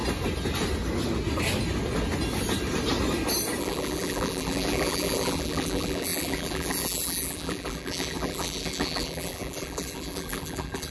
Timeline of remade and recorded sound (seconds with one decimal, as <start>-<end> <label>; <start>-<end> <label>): 0.0-3.6 recorded; 3.6-10.9 remade